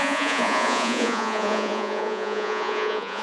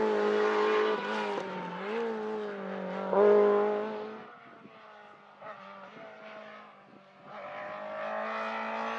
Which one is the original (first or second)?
second